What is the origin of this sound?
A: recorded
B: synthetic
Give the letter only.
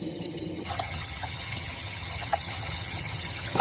B